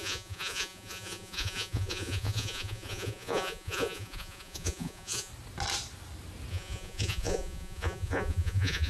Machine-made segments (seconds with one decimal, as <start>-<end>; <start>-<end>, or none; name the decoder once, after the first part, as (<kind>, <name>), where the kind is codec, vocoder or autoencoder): 0.0-5.3 (vocoder, Vocos); 6.5-8.9